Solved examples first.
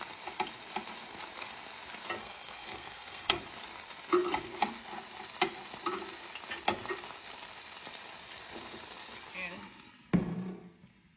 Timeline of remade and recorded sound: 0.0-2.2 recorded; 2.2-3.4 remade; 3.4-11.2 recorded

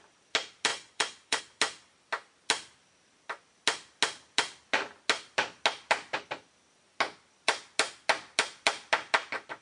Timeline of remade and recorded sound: 0.0-0.7 recorded; 0.7-1.4 remade; 1.4-9.6 recorded

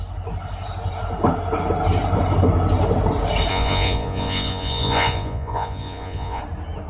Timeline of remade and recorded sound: 0.0-3.5 recorded; 3.5-6.4 remade; 6.4-6.9 recorded

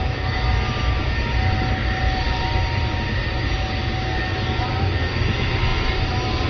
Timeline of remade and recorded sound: 0.0-6.5 recorded

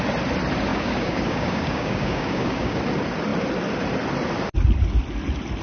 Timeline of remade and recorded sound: 0.0-0.7 recorded; 0.7-2.8 remade; 2.8-5.6 recorded